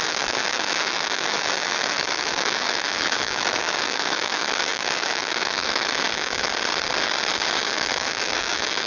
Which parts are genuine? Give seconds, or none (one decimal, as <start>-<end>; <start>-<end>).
6.5-7.7